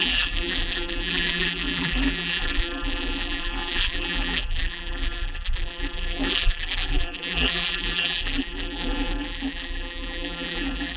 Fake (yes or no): yes